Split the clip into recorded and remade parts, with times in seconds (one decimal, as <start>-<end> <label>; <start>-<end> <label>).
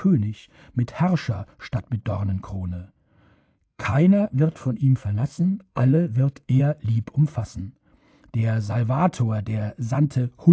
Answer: 0.0-3.0 recorded; 3.0-6.6 remade; 6.6-10.5 recorded